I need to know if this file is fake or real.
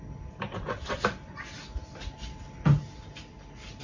real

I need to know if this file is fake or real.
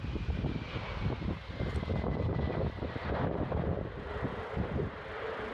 real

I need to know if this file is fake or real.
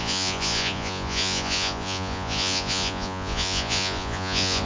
fake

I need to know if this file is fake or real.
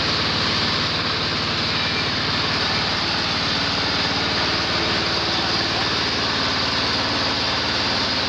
real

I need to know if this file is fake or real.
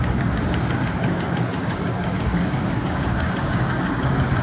fake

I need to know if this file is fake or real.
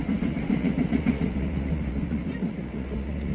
fake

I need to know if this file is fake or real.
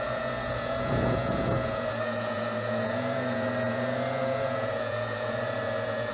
fake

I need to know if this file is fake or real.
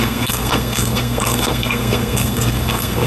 fake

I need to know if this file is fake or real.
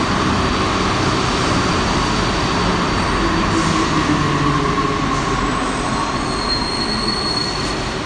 real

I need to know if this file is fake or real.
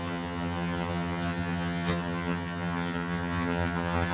fake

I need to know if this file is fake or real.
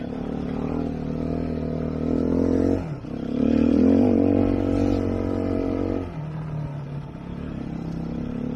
real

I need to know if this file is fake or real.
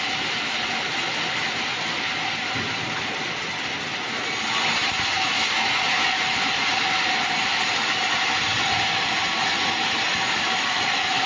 real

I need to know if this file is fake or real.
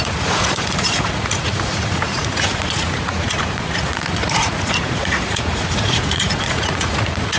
fake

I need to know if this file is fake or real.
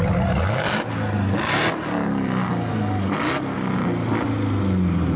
real